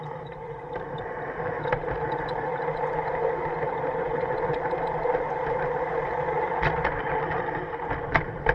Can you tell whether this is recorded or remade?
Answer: remade